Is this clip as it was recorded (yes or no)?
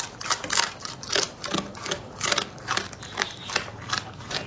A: yes